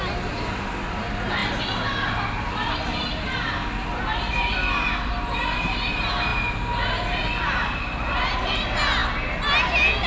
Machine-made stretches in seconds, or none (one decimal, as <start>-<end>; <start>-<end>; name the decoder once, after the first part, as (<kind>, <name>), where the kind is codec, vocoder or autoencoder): none